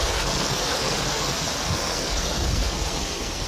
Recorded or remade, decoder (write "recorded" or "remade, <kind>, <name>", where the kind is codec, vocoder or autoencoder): remade, codec, SNAC